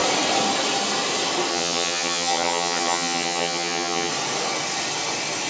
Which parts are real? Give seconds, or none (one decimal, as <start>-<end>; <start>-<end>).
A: 0.0-1.5; 4.1-5.5